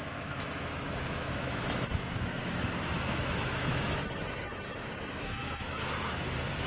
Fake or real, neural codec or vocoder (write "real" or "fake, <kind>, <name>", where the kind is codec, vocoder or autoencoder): fake, autoencoder, DAC-VAE